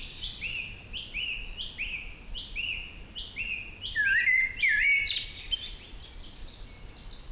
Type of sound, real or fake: real